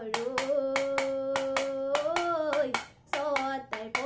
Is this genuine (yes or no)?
yes